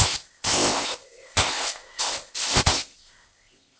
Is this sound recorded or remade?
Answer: remade